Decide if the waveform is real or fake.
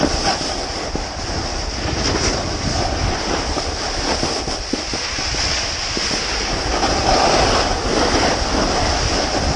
real